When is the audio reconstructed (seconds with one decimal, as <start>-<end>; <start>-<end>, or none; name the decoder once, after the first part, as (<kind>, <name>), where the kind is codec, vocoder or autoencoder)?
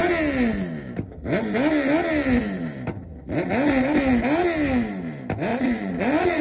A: 5.5-6.4 (vocoder, Vocos)